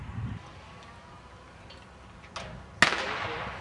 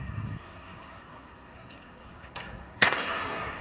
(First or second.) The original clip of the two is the first